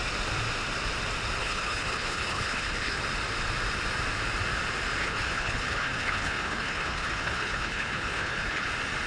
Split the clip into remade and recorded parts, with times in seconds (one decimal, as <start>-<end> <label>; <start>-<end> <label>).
0.0-1.4 recorded; 1.4-3.0 remade; 3.0-5.0 recorded; 5.0-8.7 remade; 8.7-9.1 recorded